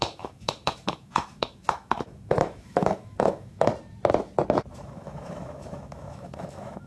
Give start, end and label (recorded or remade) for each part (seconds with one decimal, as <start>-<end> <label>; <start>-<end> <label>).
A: 0.0-3.7 remade; 3.7-4.7 recorded; 4.7-6.9 remade